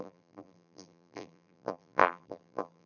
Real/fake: fake